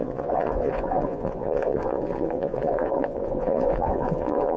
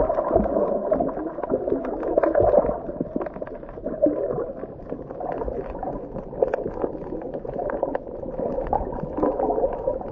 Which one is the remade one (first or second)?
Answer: first